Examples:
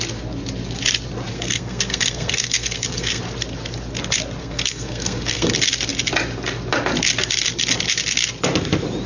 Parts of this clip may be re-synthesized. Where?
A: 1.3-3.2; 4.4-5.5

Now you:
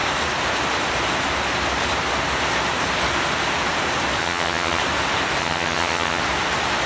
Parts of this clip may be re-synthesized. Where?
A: 4.2-4.8; 5.4-6.2

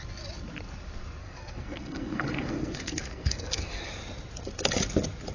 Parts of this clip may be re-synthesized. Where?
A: 1.2-3.9

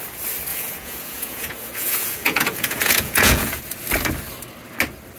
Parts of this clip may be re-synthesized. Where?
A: 0.5-3.6

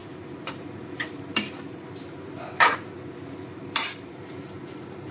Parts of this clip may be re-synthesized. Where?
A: 0.0-5.1